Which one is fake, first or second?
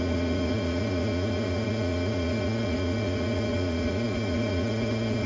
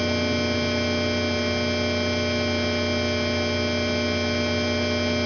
first